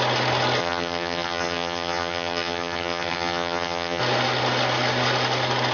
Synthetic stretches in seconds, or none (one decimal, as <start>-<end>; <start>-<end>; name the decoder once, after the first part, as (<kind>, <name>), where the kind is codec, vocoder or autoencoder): 0.6-4.0 (vocoder, HiFi-GAN)